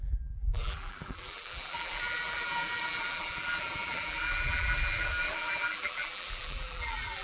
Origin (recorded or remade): remade